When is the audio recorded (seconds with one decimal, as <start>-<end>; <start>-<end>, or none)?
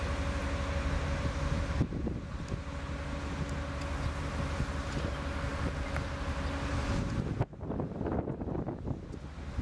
0.0-9.6